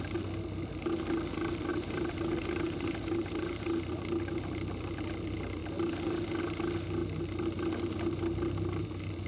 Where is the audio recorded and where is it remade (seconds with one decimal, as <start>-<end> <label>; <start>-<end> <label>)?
0.0-1.7 recorded; 1.7-3.9 remade; 3.9-9.3 recorded